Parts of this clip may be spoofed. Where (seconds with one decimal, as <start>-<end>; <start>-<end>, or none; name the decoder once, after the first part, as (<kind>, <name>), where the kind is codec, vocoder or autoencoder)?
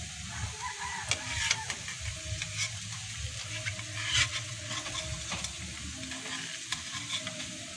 4.2-5.0 (vocoder, WaveNeXt)